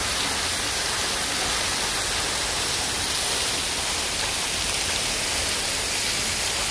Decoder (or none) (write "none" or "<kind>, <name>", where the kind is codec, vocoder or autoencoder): none